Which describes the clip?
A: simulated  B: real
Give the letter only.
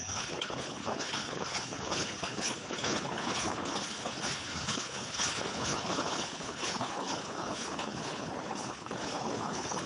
A